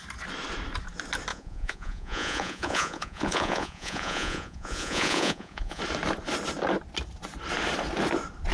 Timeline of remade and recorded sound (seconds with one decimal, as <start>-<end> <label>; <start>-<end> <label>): 0.0-1.3 recorded; 1.3-5.8 remade; 5.8-8.5 recorded